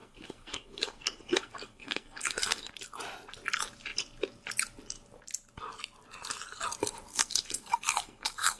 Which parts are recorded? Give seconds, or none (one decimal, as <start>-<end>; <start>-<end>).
2.7-7.1